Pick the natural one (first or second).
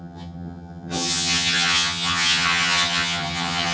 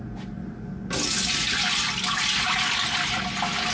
second